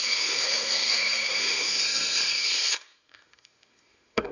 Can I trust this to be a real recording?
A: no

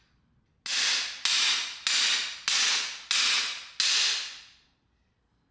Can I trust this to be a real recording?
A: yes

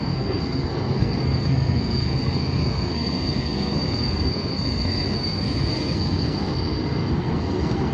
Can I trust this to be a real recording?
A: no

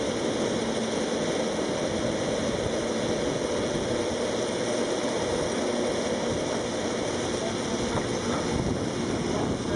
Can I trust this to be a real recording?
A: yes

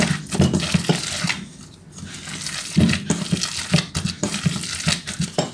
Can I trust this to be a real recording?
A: yes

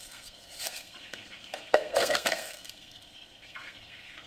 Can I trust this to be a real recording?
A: no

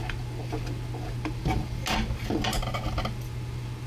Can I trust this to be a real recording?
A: yes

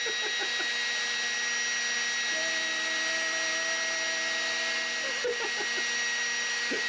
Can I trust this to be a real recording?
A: yes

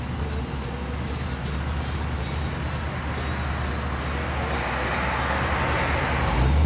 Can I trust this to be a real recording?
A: yes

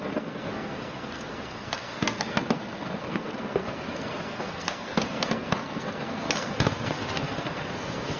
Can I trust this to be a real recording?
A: no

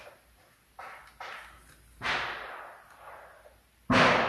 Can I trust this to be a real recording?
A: yes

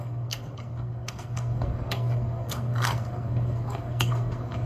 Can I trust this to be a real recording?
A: no